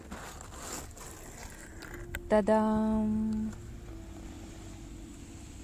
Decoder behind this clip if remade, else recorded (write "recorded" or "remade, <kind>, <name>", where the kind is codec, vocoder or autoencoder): recorded